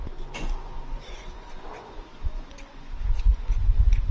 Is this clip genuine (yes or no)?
no